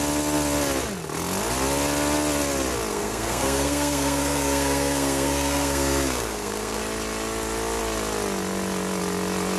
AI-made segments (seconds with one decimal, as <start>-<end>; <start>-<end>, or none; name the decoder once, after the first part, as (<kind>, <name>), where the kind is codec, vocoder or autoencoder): 2.9-6.8 (codec, SNAC)